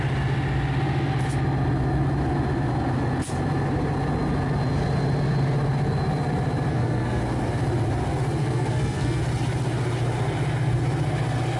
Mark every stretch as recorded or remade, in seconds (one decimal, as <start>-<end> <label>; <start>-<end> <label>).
0.0-6.7 recorded; 6.7-7.2 remade; 7.2-8.4 recorded; 8.4-9.2 remade; 9.2-11.6 recorded